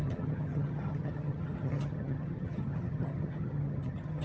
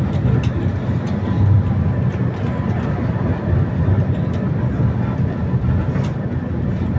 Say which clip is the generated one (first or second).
first